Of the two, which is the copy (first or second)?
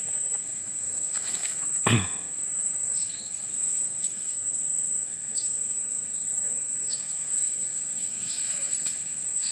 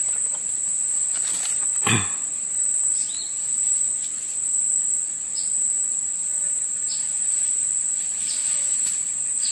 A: first